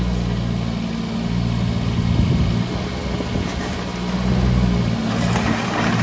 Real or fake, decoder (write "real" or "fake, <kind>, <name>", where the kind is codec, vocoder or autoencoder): real